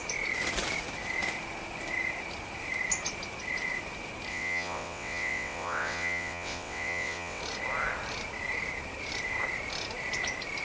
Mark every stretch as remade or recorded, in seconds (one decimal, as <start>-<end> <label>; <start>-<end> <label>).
0.0-4.3 recorded; 4.3-7.4 remade; 7.4-10.6 recorded